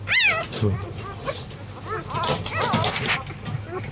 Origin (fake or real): real